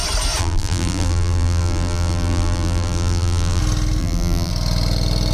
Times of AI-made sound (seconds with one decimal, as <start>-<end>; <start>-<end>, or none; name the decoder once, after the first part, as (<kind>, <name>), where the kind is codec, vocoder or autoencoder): 0.4-3.6 (vocoder, BigVGAN v2); 4.0-4.5